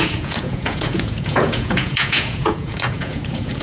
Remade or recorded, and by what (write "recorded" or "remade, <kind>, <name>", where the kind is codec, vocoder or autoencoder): remade, vocoder, Vocos